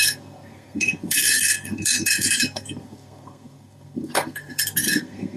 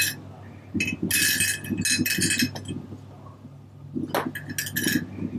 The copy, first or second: first